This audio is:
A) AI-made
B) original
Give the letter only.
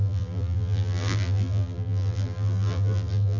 A